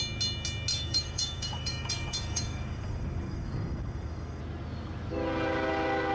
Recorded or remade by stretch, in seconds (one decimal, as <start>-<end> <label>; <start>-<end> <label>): 0.0-0.7 recorded; 0.7-4.4 remade; 4.4-6.1 recorded